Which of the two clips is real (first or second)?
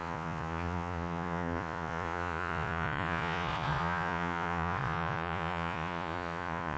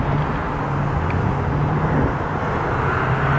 second